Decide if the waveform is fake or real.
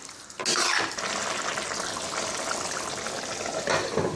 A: real